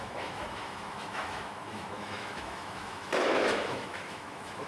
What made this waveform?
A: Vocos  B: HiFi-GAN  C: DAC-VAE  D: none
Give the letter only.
C